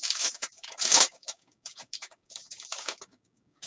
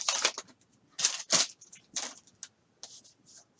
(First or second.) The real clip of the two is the second